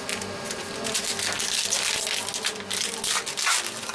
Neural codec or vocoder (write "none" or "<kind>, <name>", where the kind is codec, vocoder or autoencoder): none